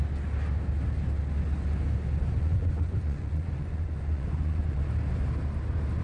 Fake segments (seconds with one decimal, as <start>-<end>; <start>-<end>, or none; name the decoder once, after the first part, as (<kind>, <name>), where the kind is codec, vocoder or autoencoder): 2.4-4.8 (vocoder, Vocos)